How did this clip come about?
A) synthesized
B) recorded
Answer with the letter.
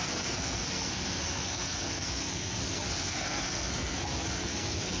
A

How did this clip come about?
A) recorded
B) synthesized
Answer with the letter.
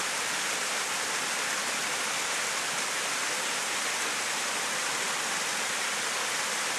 A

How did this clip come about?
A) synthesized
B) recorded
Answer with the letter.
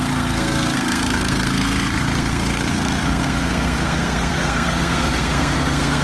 A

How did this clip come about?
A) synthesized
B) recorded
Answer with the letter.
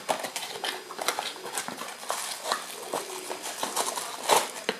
B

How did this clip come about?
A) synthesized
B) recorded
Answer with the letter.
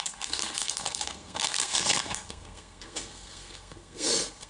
A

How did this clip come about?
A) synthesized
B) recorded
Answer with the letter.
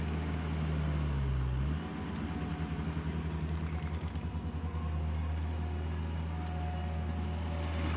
B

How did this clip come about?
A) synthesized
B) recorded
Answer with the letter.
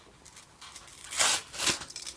B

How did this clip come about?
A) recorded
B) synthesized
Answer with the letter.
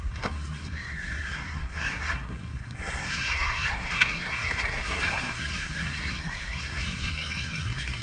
B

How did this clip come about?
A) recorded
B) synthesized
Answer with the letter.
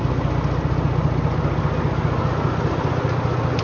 A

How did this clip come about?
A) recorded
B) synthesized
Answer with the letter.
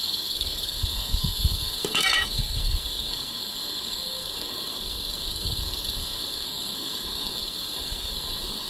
B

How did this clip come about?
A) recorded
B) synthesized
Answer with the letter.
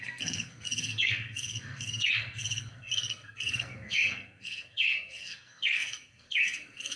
B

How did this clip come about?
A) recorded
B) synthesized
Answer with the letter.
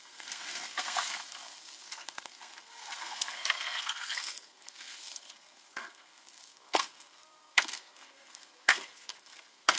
B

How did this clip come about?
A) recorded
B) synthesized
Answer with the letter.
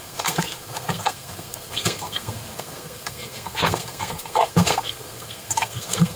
B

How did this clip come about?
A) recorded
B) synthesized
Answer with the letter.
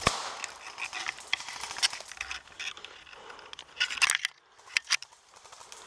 A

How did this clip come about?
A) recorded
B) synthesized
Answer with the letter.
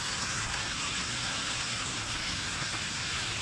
B